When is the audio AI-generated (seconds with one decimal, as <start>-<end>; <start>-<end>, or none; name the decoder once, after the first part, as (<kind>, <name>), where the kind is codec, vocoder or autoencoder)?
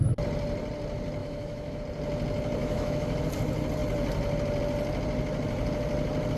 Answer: 1.2-1.8 (autoencoder, DAC-VAE); 2.6-3.2